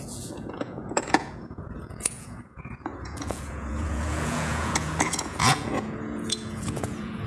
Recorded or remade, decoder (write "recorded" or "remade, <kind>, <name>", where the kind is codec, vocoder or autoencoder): remade, vocoder, Vocos